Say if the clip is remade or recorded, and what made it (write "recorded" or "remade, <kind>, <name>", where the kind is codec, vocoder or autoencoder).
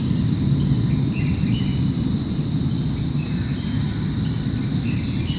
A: recorded